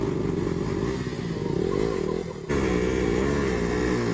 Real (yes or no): yes